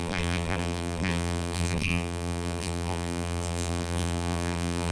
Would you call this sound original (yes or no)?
no